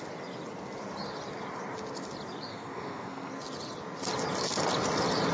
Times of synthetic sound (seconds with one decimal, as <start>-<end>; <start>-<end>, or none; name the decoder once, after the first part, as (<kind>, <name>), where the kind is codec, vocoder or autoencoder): 2.5-3.3 (codec, SNAC)